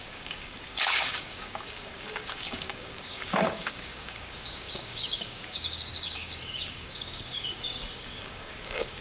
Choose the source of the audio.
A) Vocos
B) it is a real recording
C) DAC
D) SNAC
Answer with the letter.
C